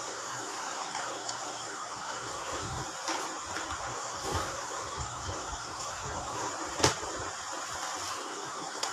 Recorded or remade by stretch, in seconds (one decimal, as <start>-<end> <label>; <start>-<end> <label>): 0.0-2.8 remade; 2.8-3.8 recorded; 3.8-6.5 remade; 6.5-8.1 recorded; 8.1-8.9 remade

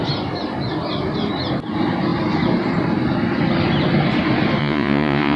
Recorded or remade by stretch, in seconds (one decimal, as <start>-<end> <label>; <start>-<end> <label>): 0.0-4.6 recorded; 4.6-5.4 remade

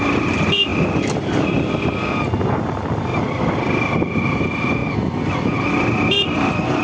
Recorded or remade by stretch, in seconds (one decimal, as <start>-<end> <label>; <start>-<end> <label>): 0.0-6.8 recorded

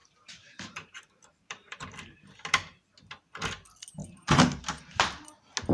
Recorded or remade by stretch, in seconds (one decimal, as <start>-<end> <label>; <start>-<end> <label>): 0.0-2.0 remade; 2.0-4.0 recorded; 4.0-4.6 remade; 4.6-5.7 recorded